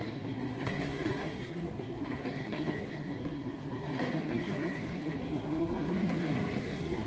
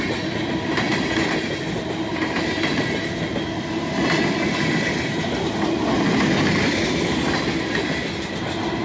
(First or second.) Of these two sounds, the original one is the second